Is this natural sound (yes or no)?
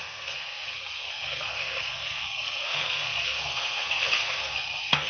no